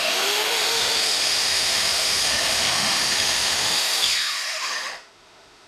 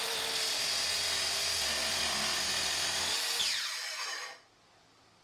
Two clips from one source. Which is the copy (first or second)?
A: first